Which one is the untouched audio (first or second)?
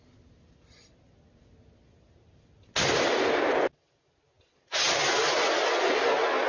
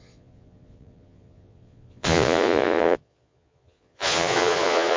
first